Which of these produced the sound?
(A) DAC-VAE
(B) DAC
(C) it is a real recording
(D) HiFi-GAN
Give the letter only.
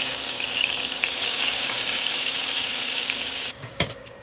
B